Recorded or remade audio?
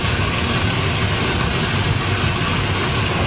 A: recorded